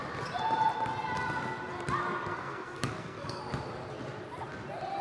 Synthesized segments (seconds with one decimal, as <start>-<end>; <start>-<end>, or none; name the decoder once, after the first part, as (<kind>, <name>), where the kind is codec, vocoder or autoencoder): 2.3-3.4 (codec, SNAC)